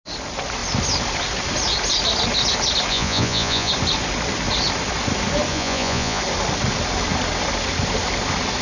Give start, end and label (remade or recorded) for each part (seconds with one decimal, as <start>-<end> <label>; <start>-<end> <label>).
0.0-2.9 recorded; 2.9-3.7 remade; 3.7-5.5 recorded; 5.5-6.2 remade; 6.2-8.6 recorded